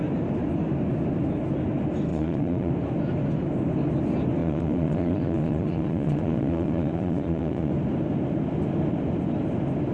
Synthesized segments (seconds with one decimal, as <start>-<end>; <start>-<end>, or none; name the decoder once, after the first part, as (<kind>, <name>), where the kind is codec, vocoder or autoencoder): 2.1-2.7 (vocoder, Vocos); 4.4-7.7